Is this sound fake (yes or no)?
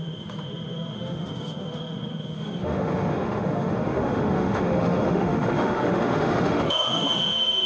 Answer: yes